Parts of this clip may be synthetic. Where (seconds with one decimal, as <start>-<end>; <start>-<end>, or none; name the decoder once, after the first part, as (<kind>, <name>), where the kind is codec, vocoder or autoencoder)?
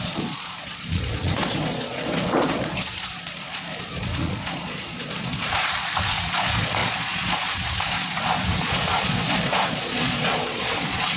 0.0-11.2 (vocoder, Vocos)